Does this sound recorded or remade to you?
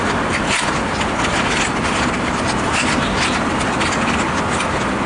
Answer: recorded